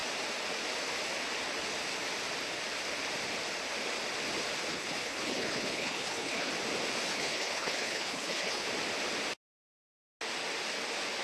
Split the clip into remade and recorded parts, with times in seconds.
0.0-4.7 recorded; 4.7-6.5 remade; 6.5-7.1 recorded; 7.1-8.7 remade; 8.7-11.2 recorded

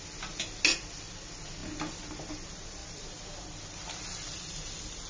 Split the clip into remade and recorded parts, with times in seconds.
0.0-5.1 recorded

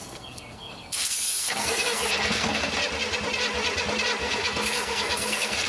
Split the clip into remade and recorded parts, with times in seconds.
0.0-2.7 remade; 2.7-4.2 recorded; 4.2-5.7 remade

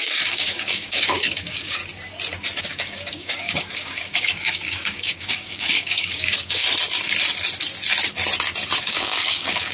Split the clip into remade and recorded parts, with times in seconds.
0.0-1.8 remade; 1.8-2.6 recorded; 2.6-6.6 remade; 6.6-8.8 recorded; 8.8-9.7 remade

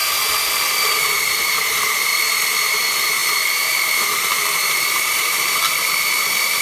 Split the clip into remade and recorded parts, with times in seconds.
0.0-1.0 recorded; 1.0-2.1 remade; 2.1-2.7 recorded; 2.7-6.6 remade

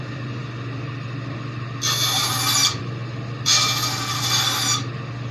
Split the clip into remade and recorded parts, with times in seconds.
0.0-0.4 remade; 0.4-2.7 recorded; 2.7-3.5 remade; 3.5-5.3 recorded

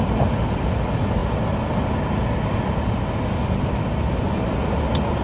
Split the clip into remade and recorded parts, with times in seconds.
0.0-5.2 recorded